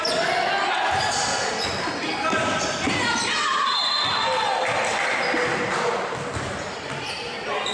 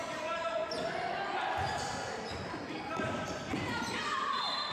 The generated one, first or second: second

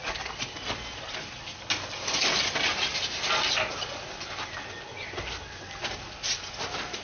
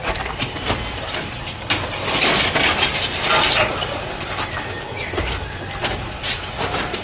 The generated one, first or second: second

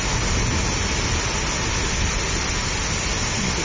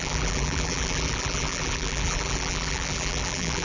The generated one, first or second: second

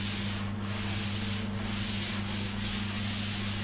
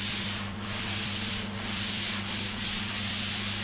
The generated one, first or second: second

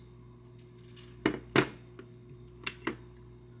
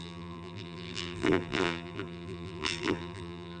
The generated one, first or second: second